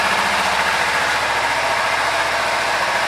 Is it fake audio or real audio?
real